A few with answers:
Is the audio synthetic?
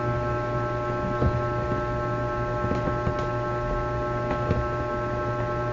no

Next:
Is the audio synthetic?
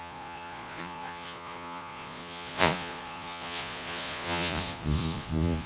yes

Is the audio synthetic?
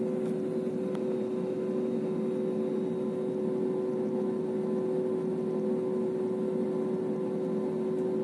no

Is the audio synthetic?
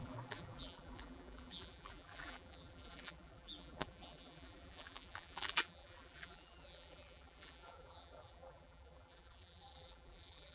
yes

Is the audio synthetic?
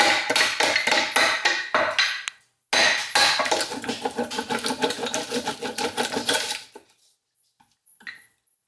no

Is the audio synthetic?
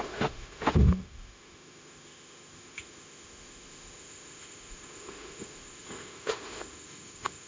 yes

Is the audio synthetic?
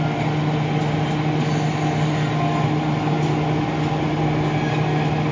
no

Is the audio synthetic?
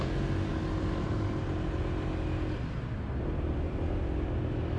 no